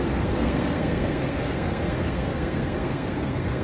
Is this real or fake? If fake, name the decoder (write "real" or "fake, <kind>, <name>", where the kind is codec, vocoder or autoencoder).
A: fake, codec, SNAC